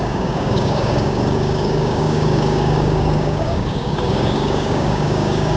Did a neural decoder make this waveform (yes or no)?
yes